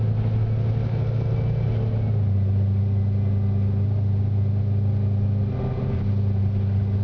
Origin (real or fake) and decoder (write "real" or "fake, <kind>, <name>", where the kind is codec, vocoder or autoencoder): real